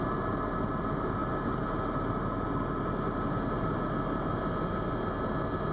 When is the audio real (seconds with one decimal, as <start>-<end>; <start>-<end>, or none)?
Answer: 0.0-5.7